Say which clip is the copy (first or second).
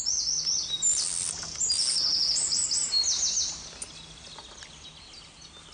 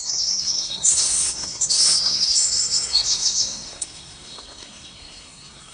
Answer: second